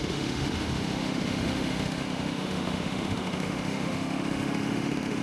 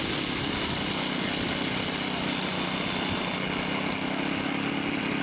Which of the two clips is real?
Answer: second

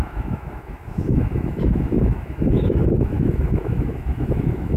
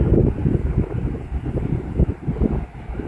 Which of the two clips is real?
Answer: second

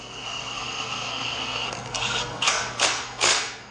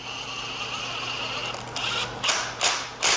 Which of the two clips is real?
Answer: second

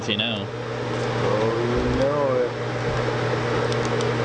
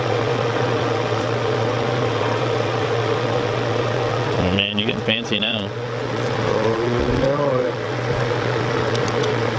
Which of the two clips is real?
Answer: first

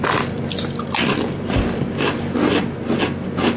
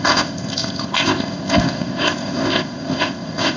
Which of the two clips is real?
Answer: first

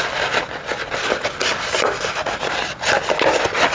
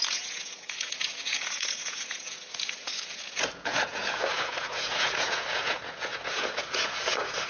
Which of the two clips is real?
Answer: first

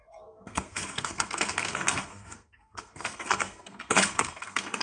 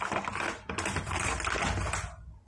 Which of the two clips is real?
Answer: second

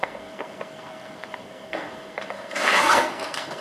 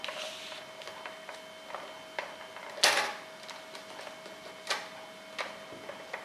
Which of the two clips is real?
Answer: second